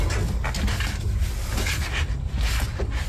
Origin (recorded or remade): recorded